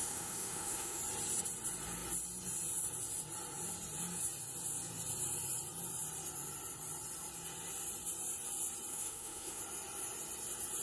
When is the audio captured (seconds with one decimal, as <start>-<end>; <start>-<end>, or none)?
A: 1.0-8.9; 9.6-10.8